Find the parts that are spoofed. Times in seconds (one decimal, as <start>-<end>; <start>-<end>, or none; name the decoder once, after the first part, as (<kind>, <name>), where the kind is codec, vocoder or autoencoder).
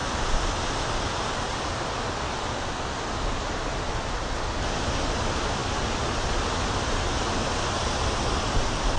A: none